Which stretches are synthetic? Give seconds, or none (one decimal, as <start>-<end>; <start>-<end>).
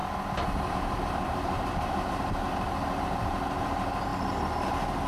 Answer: 0.7-2.4; 3.0-4.1